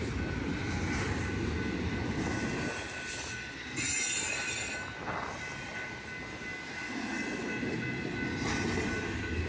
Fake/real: real